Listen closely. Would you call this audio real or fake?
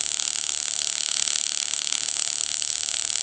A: fake